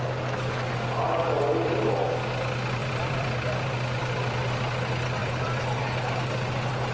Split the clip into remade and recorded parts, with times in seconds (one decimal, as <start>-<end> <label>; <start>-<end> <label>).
0.0-2.8 recorded; 2.8-4.5 remade; 4.5-5.2 recorded; 5.2-5.8 remade; 5.8-6.9 recorded

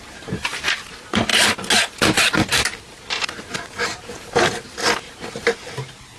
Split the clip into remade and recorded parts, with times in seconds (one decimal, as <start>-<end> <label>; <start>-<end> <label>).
0.0-1.3 remade; 1.3-5.0 recorded; 5.0-6.2 remade